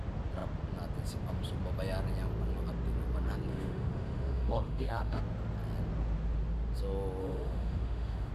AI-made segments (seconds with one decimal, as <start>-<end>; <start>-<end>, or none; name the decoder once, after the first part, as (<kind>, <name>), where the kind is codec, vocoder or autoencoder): 3.5-5.2 (autoencoder, DAC-VAE); 7.2-8.3